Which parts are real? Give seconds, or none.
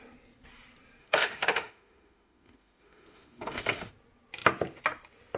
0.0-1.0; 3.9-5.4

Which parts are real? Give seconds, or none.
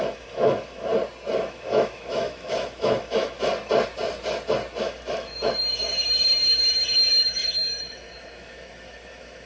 0.9-1.4; 3.5-4.8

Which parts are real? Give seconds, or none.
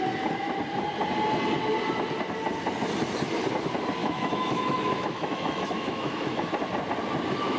0.0-4.0; 6.5-7.6